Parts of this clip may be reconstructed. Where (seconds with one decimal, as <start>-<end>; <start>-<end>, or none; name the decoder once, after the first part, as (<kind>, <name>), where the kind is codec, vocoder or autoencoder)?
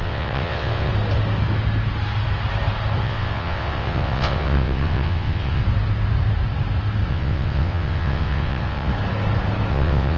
0.0-0.9 (vocoder, WaveNeXt); 3.0-5.6; 7.1-8.9; 9.7-10.2